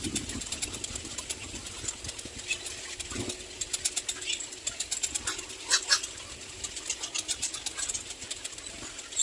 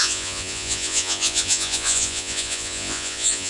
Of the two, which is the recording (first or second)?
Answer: first